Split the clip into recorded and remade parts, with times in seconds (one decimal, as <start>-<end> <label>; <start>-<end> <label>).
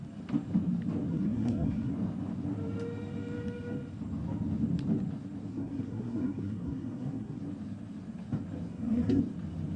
0.0-1.1 recorded; 1.1-1.9 remade; 1.9-5.5 recorded; 5.5-7.4 remade; 7.4-8.7 recorded; 8.7-9.2 remade; 9.2-9.8 recorded